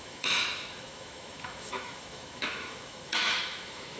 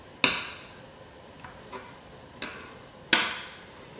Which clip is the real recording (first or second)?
second